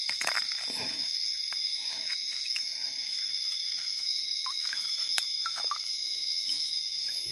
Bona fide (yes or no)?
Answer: no